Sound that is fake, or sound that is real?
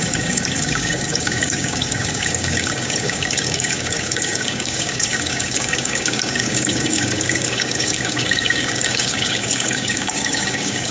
fake